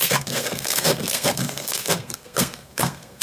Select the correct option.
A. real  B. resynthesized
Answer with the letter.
B